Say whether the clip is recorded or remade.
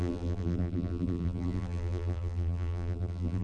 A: remade